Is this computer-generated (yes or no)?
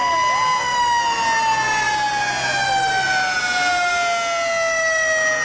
no